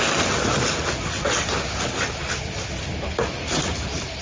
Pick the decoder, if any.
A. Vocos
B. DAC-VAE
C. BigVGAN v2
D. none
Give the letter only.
D